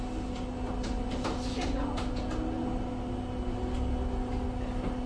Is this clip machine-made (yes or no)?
no